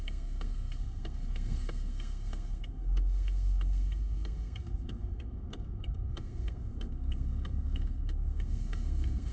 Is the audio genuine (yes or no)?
no